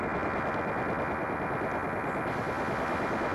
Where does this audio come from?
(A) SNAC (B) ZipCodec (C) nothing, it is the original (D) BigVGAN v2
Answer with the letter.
C